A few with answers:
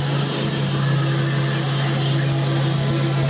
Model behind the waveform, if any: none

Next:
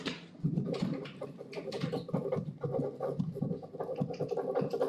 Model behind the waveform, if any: none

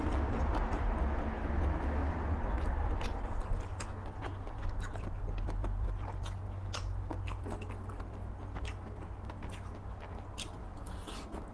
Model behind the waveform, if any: none